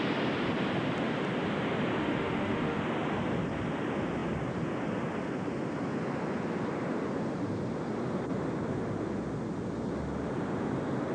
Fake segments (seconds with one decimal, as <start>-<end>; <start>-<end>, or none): 2.0-2.8

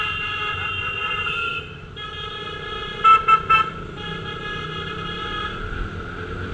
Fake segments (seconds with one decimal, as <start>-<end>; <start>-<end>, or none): none

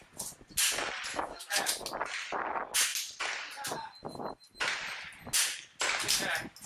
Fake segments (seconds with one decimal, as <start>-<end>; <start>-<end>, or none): 1.1-1.7